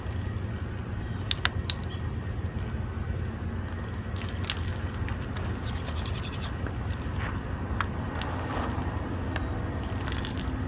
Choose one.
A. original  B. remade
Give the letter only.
A